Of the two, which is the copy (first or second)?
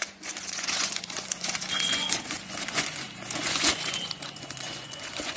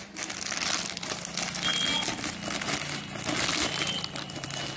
first